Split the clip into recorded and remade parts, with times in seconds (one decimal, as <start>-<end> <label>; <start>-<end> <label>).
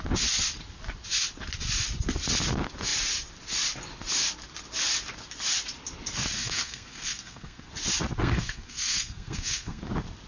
0.0-6.4 recorded; 6.4-7.7 remade; 7.7-8.2 recorded; 8.2-9.8 remade; 9.8-10.3 recorded